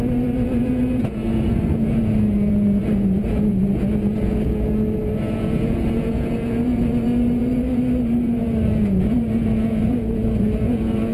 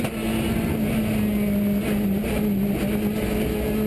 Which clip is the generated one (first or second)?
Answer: first